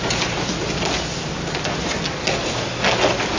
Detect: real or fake real